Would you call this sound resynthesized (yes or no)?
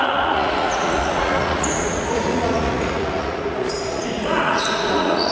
yes